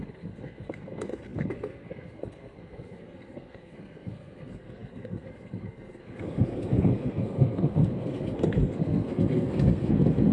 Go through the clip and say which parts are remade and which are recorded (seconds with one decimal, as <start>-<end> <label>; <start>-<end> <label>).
0.0-10.3 remade